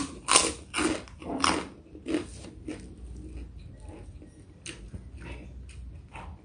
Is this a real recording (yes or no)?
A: yes